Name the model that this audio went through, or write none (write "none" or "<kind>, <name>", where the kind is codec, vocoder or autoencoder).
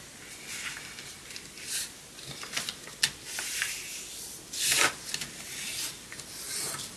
none